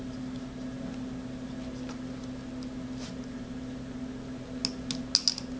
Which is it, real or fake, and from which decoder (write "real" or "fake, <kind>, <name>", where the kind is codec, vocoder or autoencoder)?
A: real